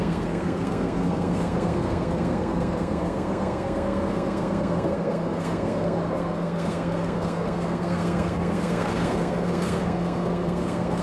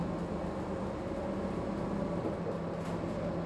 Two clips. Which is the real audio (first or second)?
second